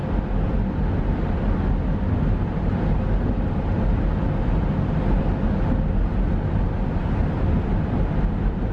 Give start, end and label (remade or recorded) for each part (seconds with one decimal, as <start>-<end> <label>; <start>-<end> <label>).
0.0-8.7 recorded